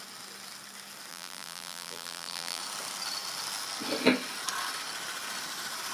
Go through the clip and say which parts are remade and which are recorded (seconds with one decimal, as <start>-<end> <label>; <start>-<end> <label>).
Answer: 0.0-1.1 recorded; 1.1-2.6 remade; 2.6-5.9 recorded